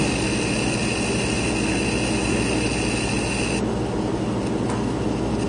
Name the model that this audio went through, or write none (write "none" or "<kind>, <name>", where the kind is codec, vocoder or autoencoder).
none